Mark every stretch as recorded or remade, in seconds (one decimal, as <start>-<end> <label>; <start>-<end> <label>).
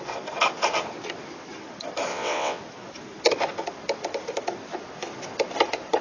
0.0-2.1 recorded; 2.1-2.6 remade; 2.6-6.0 recorded